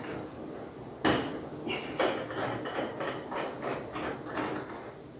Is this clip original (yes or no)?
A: yes